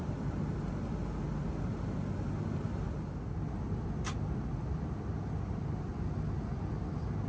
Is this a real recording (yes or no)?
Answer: yes